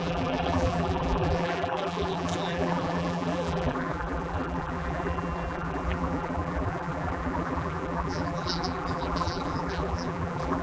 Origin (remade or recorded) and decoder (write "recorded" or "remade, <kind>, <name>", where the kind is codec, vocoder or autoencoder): remade, vocoder, BigVGAN v2